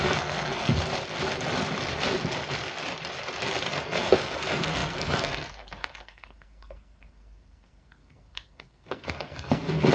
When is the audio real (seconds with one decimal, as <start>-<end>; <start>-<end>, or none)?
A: 0.8-3.7